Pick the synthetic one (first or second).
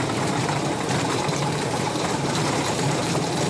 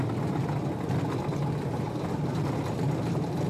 first